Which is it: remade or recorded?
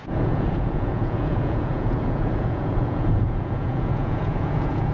remade